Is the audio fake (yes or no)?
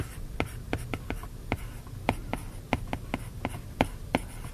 no